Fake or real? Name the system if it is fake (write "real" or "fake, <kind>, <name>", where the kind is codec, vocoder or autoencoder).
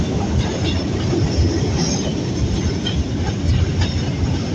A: real